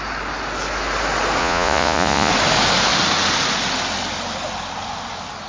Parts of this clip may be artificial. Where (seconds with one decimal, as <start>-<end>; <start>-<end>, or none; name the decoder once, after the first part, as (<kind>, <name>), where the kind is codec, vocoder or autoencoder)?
1.4-2.3 (vocoder, Vocos)